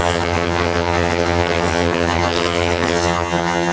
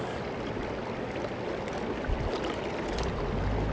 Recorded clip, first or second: second